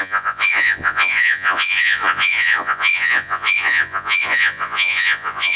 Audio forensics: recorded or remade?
remade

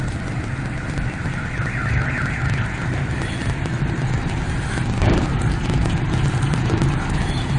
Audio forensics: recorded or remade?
recorded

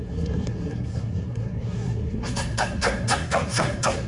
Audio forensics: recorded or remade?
remade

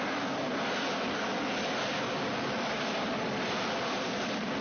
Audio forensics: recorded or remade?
recorded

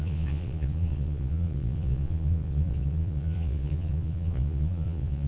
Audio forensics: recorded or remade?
remade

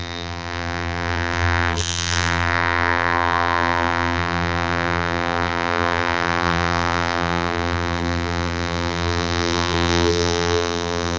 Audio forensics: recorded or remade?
remade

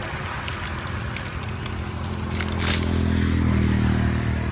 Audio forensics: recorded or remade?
recorded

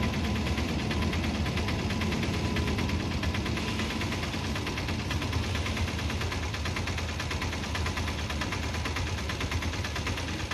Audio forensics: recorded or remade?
recorded